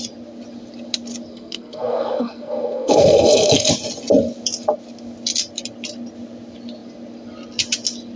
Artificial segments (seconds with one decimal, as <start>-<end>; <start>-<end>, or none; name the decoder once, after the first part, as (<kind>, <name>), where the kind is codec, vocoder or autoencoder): 1.3-3.7 (codec, SNAC)